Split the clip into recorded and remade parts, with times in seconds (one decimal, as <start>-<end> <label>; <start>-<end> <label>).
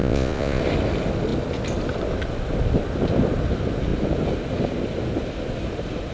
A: 0.0-0.6 remade; 0.6-6.1 recorded